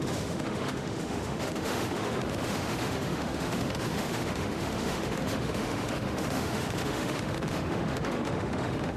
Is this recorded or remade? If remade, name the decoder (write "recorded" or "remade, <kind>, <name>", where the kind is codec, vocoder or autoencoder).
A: remade, autoencoder, DAC-VAE